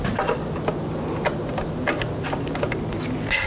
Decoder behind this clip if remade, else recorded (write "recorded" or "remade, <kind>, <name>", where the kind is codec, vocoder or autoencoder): recorded